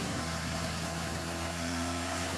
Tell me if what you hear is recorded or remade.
remade